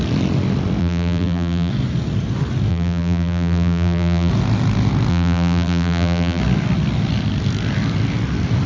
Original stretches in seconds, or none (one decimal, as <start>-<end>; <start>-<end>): 0.0-0.8; 1.7-2.7; 4.3-5.1; 6.4-8.7